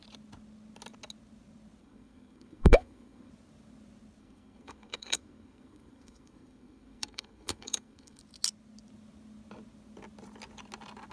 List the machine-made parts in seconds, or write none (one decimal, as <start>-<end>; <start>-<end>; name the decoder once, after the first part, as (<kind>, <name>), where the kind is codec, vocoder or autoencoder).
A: 1.8-3.3 (codec, SNAC); 4.2-8.2